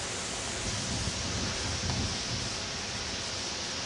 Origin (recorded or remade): recorded